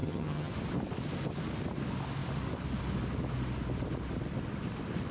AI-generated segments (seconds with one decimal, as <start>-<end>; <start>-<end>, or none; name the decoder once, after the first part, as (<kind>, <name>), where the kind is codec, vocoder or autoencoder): 0.0-0.5 (vocoder, HiFi-GAN)